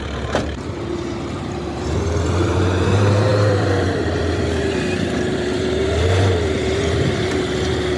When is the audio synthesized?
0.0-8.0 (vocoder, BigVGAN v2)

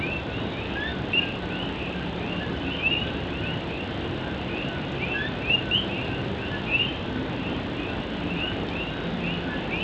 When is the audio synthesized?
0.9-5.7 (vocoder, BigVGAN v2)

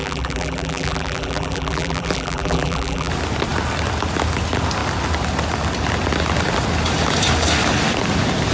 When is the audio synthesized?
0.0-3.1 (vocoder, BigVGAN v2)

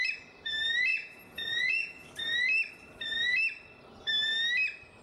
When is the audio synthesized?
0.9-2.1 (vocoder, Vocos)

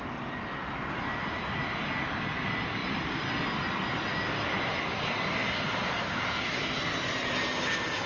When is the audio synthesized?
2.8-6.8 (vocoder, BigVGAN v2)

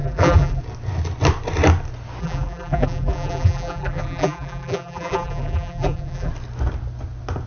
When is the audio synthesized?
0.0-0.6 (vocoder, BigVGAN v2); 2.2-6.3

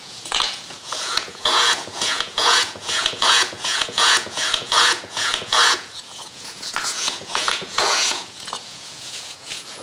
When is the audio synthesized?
0.0-9.8 (vocoder, Vocos)